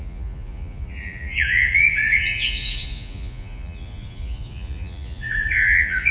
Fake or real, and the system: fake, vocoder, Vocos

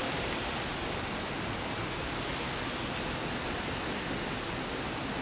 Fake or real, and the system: real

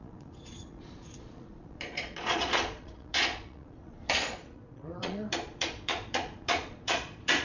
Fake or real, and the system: fake, vocoder, Vocos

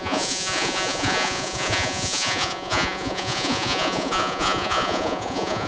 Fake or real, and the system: fake, vocoder, Vocos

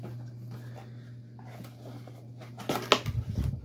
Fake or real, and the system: real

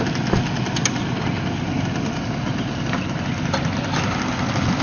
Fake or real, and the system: real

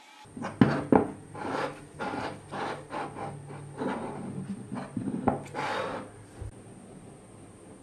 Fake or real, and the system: real